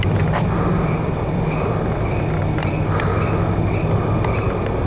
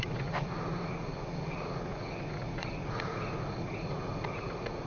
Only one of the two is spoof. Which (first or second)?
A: second